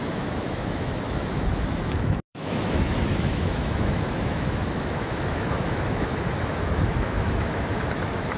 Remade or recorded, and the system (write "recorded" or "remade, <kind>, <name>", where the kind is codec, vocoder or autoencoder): remade, autoencoder, DAC-VAE